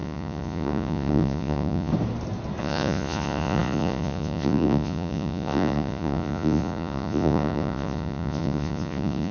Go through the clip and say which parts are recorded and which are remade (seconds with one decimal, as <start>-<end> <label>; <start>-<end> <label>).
0.0-1.9 remade; 1.9-2.6 recorded; 2.6-9.3 remade